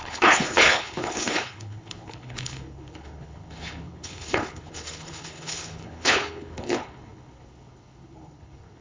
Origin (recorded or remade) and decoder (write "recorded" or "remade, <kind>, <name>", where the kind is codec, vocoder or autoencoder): remade, codec, HILCodec